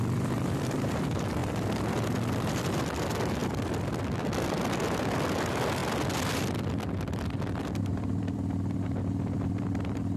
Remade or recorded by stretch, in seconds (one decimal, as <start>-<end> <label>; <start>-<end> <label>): 0.0-1.4 remade; 1.4-2.6 recorded; 2.6-3.4 remade; 3.4-4.2 recorded; 4.2-5.8 remade; 5.8-7.8 recorded; 7.8-10.2 remade

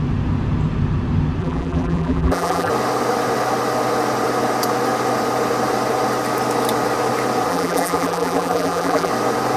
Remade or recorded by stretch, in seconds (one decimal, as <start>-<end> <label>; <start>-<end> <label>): 0.0-1.4 recorded; 1.4-2.7 remade; 2.7-7.5 recorded; 7.5-9.1 remade; 9.1-9.6 recorded